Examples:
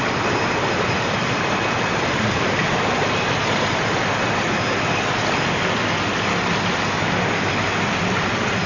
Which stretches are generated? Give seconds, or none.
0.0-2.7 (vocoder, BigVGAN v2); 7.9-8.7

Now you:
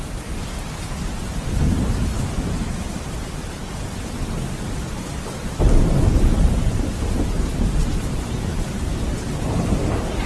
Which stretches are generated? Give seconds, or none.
2.6-3.7 (vocoder, BigVGAN v2); 6.1-10.3